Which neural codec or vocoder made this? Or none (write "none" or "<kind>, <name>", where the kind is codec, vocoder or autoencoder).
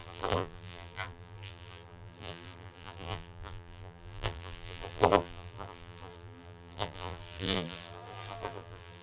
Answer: vocoder, BigVGAN v2